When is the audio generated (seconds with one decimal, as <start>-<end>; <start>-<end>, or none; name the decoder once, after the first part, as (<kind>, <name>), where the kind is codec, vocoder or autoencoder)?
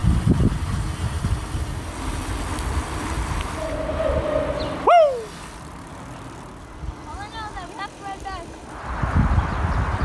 none